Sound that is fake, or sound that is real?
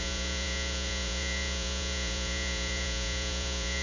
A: fake